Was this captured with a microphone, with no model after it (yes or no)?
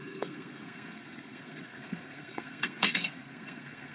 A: no